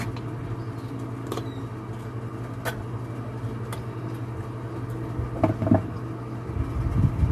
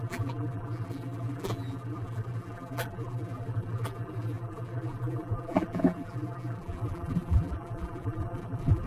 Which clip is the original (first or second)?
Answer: first